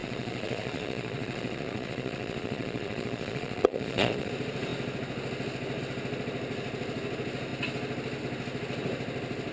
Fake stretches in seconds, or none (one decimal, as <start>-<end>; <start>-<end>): 0.0-4.3